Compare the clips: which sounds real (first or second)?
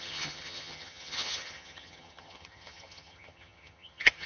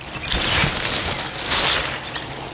second